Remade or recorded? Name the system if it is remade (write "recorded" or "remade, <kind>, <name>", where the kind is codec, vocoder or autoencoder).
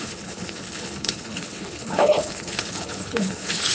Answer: remade, codec, HILCodec